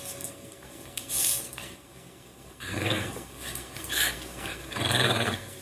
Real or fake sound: fake